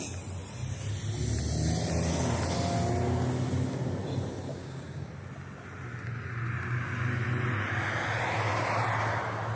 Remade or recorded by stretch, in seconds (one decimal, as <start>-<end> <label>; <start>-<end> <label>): 0.0-4.5 recorded; 4.5-5.1 remade; 5.1-9.6 recorded